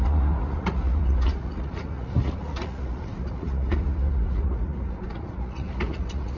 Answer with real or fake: fake